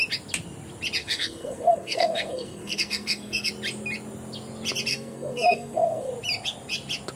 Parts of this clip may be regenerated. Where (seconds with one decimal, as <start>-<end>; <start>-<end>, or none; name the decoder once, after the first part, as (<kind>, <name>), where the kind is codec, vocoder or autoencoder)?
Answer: 1.0-3.5 (codec, SNAC); 4.9-6.1